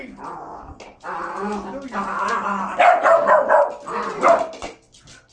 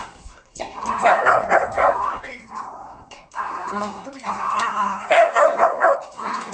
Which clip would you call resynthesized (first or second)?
second